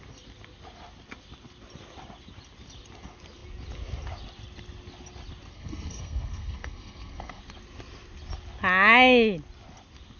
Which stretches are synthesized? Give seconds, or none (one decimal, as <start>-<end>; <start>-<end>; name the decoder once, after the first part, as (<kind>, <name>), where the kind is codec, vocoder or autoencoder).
5.5-7.4 (codec, SNAC)